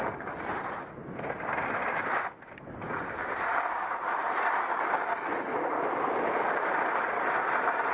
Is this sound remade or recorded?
recorded